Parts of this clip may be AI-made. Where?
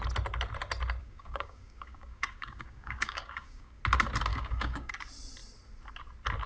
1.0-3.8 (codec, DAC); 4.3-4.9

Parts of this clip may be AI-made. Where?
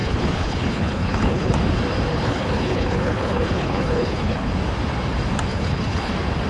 0.0-1.5 (codec, HILCodec); 2.1-4.5; 5.5-6.1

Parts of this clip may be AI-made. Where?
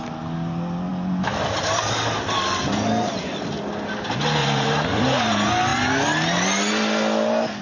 0.9-3.5 (vocoder, BigVGAN v2); 4.4-5.0